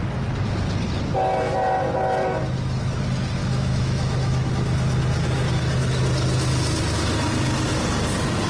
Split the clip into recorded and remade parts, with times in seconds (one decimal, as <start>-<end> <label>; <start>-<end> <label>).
0.0-3.4 recorded; 3.4-4.5 remade; 4.5-8.5 recorded